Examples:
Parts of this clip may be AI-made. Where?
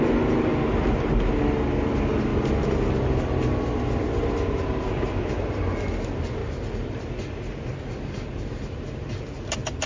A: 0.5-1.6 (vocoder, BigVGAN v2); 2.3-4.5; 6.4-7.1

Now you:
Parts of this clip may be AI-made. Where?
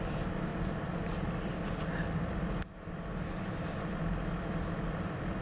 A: 0.0-5.4 (vocoder, BigVGAN v2)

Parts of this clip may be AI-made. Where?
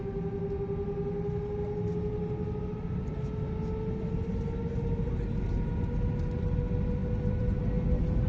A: 7.0-7.6 (vocoder, BigVGAN v2)